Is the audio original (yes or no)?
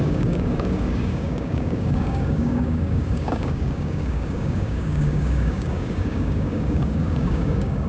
no